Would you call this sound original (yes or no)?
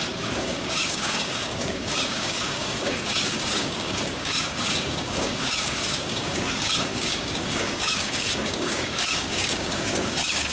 no